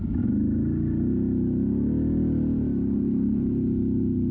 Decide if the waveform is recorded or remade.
recorded